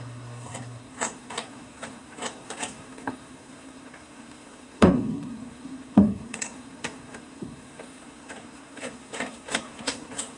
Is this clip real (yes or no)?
no